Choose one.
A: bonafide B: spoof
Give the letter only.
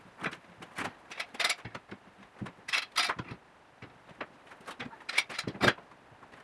A